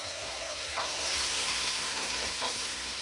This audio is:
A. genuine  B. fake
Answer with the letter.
B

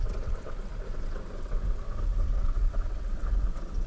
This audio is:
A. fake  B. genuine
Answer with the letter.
A